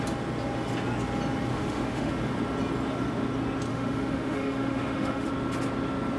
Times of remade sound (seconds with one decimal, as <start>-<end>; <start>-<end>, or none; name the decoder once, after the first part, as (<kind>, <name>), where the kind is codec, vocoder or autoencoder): 1.5-2.1 (autoencoder, DAC-VAE); 3.7-5.3